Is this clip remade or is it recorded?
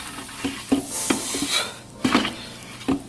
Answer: recorded